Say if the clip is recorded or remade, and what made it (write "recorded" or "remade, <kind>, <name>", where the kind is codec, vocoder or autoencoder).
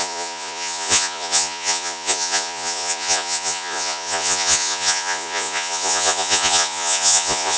remade, vocoder, Vocos